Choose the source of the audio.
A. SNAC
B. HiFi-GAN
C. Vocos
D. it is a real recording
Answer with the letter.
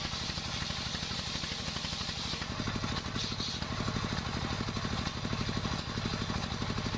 D